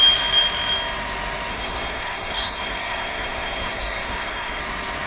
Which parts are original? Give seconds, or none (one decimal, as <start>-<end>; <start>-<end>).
0.0-1.5; 4.6-5.1

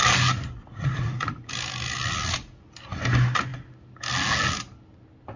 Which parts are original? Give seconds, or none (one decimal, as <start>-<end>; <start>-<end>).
0.0-0.6; 1.5-5.4

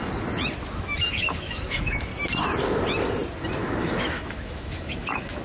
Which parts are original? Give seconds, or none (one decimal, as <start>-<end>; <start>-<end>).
0.0-0.7; 2.1-3.5

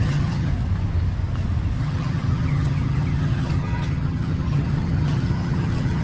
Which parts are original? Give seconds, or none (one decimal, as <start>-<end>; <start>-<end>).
0.5-1.8

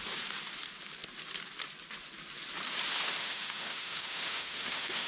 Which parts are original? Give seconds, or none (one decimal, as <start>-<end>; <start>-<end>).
0.0-3.2

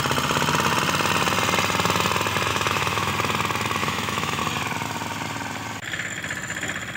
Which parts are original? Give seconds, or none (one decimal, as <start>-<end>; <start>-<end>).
0.0-2.5; 3.1-3.8; 4.4-7.0

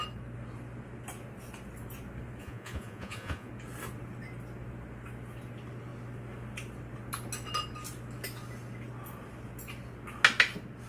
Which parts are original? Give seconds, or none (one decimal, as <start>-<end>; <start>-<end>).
0.0-2.4; 3.5-10.9

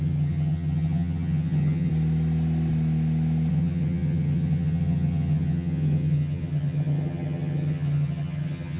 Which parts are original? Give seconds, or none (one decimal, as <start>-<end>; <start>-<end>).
1.9-3.5